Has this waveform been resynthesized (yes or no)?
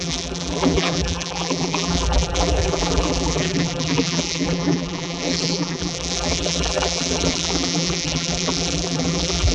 yes